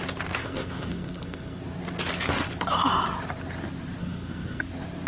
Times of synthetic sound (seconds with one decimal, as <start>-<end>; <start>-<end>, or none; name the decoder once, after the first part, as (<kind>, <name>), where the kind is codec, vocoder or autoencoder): 0.4-1.6 (codec, SNAC); 4.0-4.6